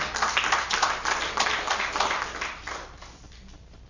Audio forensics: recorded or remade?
recorded